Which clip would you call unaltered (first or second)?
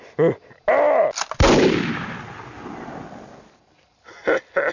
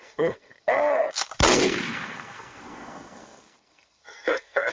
first